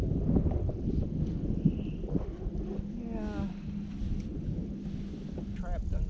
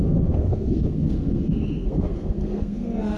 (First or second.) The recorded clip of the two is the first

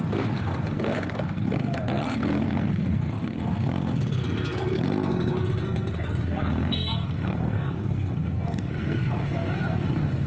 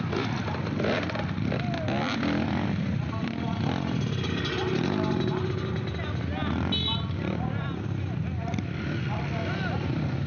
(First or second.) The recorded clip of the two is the second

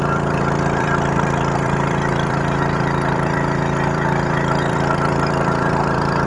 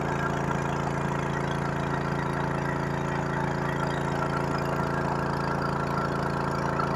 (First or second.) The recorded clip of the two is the second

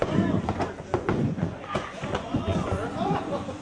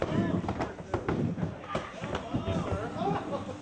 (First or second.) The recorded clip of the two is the second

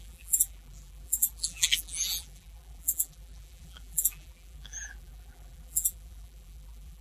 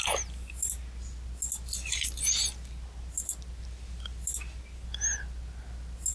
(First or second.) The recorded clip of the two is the second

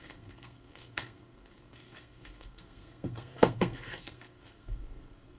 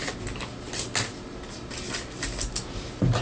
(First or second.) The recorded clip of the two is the second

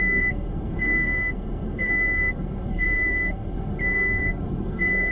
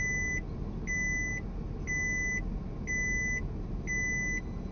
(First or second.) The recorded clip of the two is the second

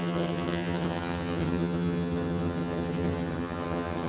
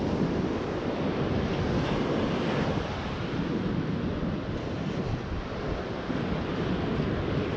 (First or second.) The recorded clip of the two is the second